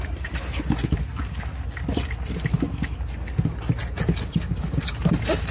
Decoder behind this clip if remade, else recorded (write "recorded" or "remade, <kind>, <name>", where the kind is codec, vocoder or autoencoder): recorded